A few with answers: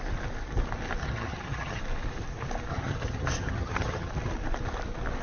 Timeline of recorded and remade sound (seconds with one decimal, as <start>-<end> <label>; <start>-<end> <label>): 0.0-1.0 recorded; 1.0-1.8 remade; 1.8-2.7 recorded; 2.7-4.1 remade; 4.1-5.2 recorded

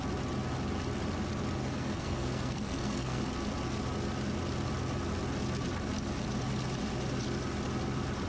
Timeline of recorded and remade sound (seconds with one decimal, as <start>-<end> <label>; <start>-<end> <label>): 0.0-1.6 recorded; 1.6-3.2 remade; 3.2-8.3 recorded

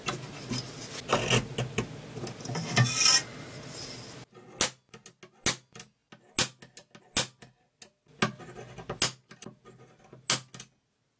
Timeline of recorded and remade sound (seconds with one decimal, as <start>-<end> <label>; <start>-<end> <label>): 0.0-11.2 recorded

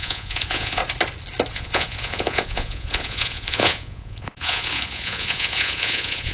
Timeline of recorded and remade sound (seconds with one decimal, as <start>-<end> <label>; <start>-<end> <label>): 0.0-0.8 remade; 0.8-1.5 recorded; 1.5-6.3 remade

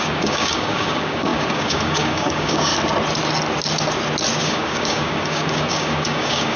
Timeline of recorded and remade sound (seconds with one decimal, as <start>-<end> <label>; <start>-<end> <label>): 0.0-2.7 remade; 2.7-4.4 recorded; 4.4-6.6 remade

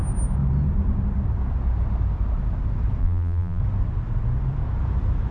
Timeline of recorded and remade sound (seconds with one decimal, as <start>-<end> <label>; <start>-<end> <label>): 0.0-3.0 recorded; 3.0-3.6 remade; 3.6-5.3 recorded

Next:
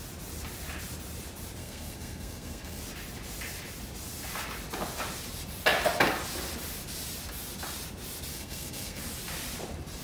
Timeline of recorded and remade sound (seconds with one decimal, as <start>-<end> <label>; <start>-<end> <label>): 0.0-1.6 recorded; 1.6-2.8 remade; 2.8-8.3 recorded; 8.3-9.0 remade; 9.0-10.0 recorded

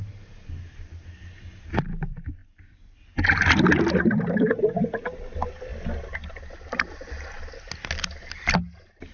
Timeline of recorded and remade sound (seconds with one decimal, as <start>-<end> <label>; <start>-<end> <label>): 0.0-9.1 recorded